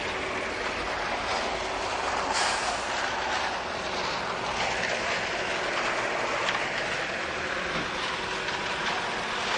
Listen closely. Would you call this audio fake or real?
real